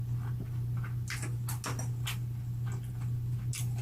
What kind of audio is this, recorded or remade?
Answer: recorded